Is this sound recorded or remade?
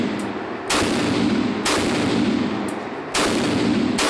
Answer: recorded